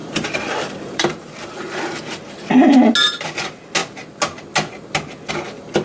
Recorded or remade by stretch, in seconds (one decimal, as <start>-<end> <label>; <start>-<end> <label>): 0.0-2.4 remade; 2.4-5.8 recorded